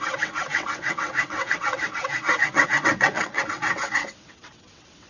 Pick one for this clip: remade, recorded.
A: remade